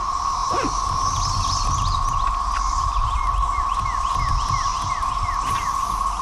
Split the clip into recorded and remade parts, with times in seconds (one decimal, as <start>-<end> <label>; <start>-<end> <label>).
0.0-6.2 recorded